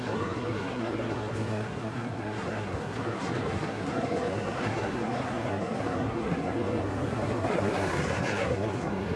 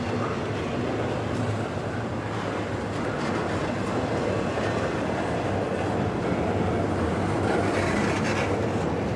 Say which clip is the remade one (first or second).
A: first